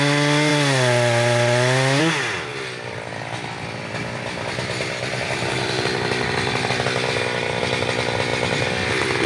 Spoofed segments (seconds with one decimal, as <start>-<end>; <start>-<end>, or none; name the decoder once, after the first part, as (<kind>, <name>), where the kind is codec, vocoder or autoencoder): none